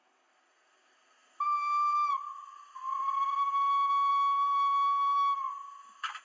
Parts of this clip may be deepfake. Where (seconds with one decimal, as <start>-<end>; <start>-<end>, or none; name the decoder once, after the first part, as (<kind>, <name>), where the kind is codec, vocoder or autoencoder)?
none